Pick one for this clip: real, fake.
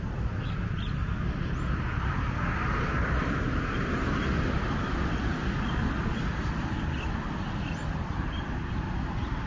real